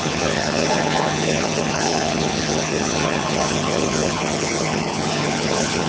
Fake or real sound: fake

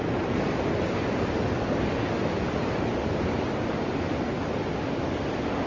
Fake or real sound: real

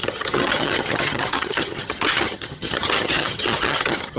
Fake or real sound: fake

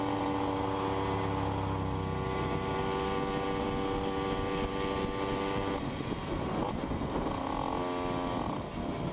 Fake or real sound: real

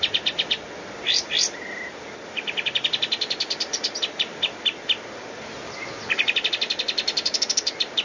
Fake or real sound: real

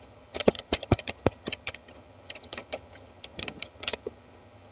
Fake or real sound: fake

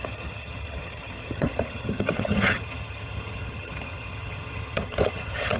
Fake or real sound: fake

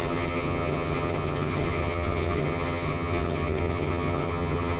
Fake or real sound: fake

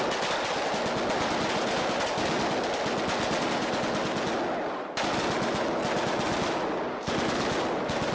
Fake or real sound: real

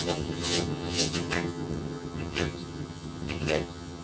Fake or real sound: fake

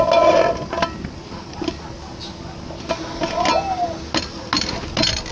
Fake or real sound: real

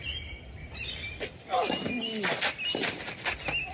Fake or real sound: real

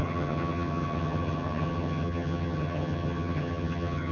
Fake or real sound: fake